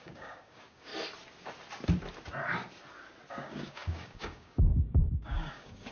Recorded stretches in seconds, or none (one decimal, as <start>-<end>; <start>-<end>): 0.9-3.3